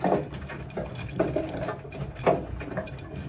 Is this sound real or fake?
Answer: real